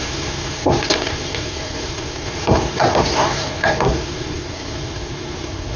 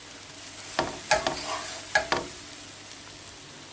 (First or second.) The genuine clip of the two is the second